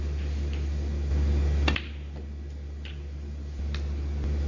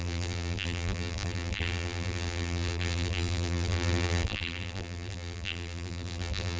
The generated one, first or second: second